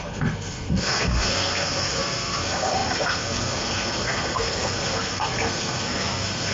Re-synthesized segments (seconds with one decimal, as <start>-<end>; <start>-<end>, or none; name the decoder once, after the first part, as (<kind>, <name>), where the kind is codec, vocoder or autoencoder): 0.0-6.5 (codec, SNAC)